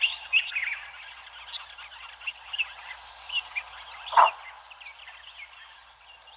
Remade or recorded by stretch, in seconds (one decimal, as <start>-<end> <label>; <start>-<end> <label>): 0.0-6.4 recorded